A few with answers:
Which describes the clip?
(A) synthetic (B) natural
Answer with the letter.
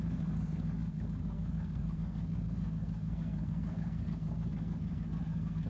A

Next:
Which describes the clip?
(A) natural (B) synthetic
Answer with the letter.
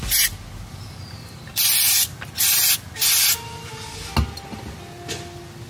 A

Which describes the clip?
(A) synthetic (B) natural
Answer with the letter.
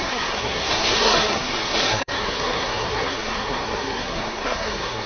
A